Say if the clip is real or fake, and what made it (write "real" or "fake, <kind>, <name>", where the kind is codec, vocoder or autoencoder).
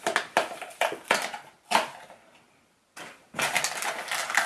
real